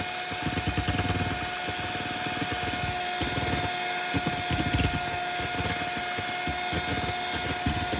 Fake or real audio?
real